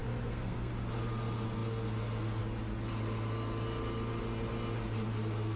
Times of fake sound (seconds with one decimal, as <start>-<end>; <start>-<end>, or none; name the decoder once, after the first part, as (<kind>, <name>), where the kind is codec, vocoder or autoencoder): 0.0-0.7 (codec, SNAC)

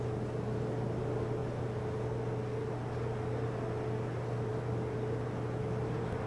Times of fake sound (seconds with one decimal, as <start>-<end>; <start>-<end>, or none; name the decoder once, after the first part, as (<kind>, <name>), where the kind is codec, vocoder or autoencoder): none